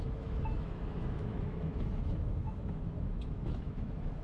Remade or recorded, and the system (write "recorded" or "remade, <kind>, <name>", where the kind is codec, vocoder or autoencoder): remade, autoencoder, DAC-VAE